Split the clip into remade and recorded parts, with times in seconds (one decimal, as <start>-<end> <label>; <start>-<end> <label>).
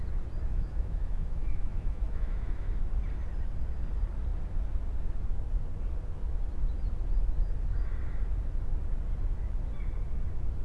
0.0-0.5 recorded; 0.5-2.7 remade; 2.7-10.6 recorded